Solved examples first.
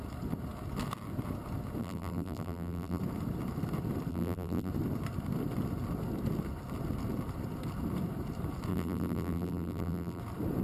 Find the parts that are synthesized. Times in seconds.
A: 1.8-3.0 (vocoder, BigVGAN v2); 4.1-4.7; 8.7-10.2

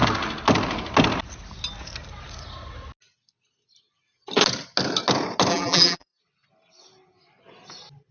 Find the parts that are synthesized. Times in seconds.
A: 5.5-6.2 (vocoder, BigVGAN v2)

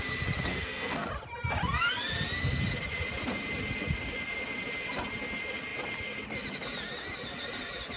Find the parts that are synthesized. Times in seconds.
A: 0.5-1.1 (codec, SNAC)

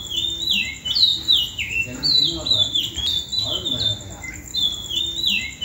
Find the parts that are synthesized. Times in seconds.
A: none

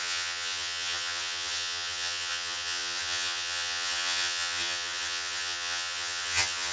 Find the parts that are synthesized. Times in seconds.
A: 0.0-6.7 (vocoder, HiFi-GAN)

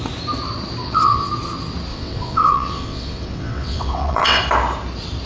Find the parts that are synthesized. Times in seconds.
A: 0.8-1.3 (vocoder, WaveNeXt); 1.9-4.4

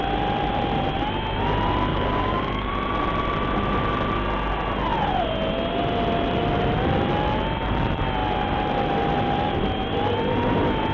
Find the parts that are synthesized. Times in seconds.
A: 1.9-2.7 (codec, DAC)